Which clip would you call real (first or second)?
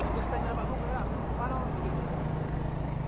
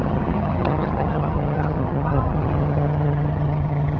first